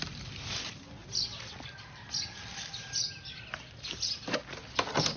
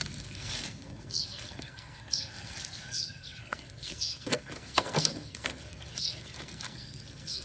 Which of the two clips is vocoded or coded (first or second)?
second